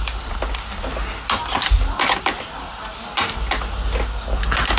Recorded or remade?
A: recorded